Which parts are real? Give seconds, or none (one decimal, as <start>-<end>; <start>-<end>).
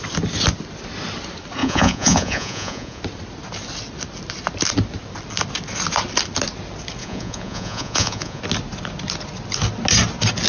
0.0-1.6; 3.0-7.0; 8.4-10.5